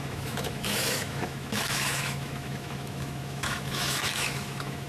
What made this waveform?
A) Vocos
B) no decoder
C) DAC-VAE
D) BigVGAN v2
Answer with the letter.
C